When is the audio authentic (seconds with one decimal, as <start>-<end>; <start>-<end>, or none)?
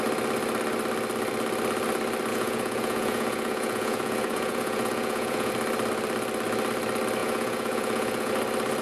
0.0-2.3; 5.5-7.2; 8.3-8.8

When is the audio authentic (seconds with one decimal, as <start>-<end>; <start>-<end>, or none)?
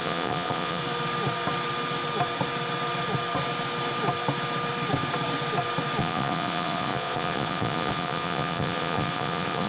0.8-6.0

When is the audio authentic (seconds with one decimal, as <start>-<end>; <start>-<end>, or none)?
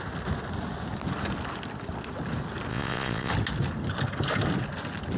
0.0-2.7; 3.3-5.2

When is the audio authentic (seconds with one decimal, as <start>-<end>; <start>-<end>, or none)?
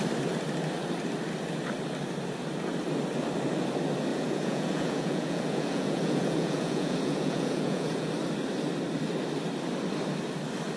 0.0-4.1; 8.1-10.8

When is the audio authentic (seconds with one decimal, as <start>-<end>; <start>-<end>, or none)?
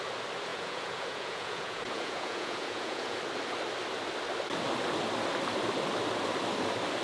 0.0-0.5; 3.2-7.0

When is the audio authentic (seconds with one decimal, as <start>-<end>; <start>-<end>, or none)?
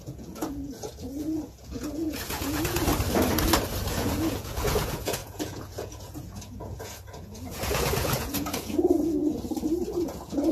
2.9-3.9; 9.3-9.9